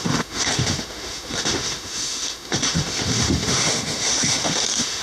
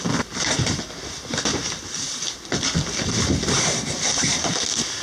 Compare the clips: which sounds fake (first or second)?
first